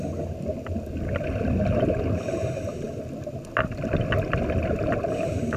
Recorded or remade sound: recorded